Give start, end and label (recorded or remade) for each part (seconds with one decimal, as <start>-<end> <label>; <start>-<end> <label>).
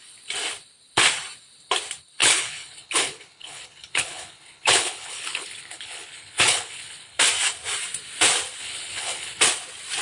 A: 0.0-2.2 recorded; 2.2-7.2 remade; 7.2-8.6 recorded; 8.6-9.4 remade; 9.4-10.0 recorded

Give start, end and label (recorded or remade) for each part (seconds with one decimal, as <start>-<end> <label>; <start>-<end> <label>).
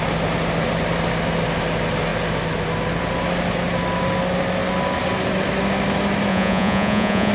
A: 0.0-6.3 recorded; 6.3-7.3 remade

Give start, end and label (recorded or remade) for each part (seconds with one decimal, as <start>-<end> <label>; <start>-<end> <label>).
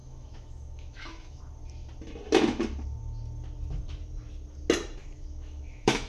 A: 0.0-1.4 remade; 1.4-5.0 recorded; 5.0-6.1 remade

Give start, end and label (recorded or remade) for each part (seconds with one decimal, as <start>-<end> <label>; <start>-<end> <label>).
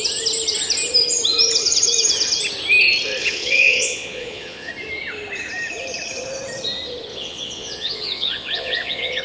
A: 0.0-3.2 recorded; 3.2-4.7 remade; 4.7-7.1 recorded; 7.1-9.2 remade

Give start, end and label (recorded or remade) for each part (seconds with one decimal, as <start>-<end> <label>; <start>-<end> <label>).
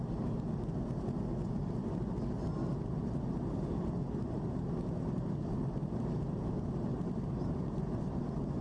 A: 0.0-6.9 recorded; 6.9-8.2 remade; 8.2-8.6 recorded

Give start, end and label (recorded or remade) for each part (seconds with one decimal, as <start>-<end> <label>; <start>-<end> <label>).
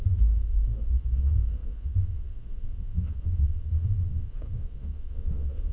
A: 0.0-5.7 remade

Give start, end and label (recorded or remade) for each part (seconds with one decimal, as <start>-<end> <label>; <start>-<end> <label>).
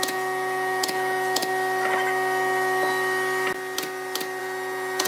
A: 0.0-1.4 remade; 1.4-4.4 recorded; 4.4-5.1 remade